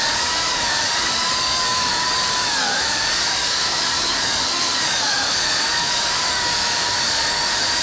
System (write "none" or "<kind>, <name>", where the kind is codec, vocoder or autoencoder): codec, DAC